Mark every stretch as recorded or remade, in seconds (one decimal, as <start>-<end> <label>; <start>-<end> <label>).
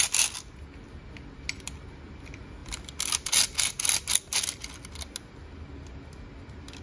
0.0-6.8 recorded